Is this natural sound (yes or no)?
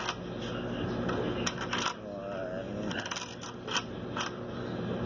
yes